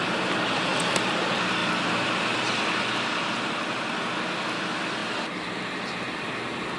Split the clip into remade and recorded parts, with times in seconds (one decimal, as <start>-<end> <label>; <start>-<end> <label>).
0.0-0.7 recorded; 0.7-1.2 remade; 1.2-1.6 recorded; 1.6-4.1 remade; 4.1-6.8 recorded